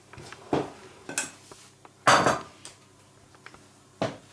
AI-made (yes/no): no